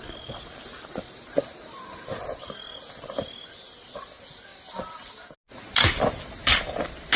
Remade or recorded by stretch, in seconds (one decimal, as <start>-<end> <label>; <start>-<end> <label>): 0.0-4.5 recorded; 4.5-5.1 remade; 5.1-7.2 recorded

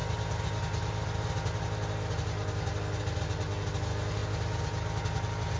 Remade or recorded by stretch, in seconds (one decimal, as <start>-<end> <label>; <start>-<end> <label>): 0.0-4.2 recorded; 4.2-5.6 remade

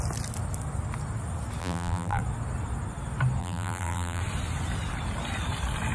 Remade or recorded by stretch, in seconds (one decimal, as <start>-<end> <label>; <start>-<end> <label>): 0.0-1.6 recorded; 1.6-2.2 remade; 2.2-3.4 recorded; 3.4-4.2 remade; 4.2-5.9 recorded

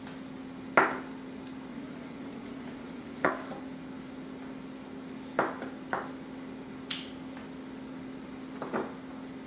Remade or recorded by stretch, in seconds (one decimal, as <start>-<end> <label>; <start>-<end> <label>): 0.0-1.7 recorded; 1.7-3.3 remade; 3.3-9.5 recorded

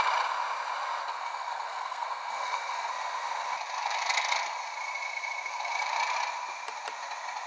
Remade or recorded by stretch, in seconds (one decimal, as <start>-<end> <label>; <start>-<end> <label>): 0.0-1.1 recorded; 1.1-2.9 remade; 2.9-7.5 recorded

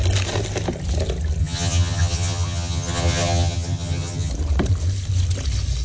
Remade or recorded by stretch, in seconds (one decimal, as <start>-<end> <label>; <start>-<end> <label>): 0.0-1.4 recorded; 1.4-4.3 remade; 4.3-5.8 recorded